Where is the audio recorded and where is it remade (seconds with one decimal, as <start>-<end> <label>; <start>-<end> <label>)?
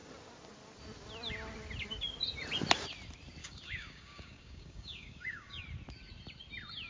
0.0-3.4 recorded; 3.4-5.6 remade; 5.6-6.9 recorded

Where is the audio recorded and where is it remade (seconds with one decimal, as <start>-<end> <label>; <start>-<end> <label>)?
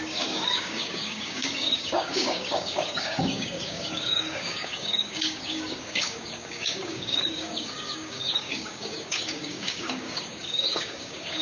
0.0-11.4 remade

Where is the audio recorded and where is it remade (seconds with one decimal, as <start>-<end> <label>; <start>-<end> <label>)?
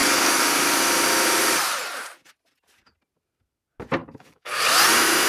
0.0-0.8 remade; 0.8-4.0 recorded; 4.0-4.7 remade; 4.7-5.3 recorded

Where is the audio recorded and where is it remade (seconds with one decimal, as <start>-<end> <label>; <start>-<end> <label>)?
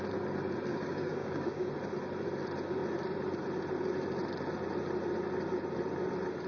0.0-0.7 recorded; 0.7-1.7 remade; 1.7-6.5 recorded